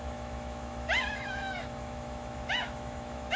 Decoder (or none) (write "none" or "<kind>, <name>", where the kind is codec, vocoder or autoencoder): autoencoder, DAC-VAE